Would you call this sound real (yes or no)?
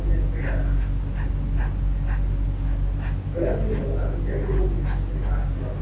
yes